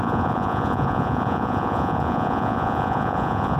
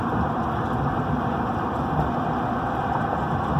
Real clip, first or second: second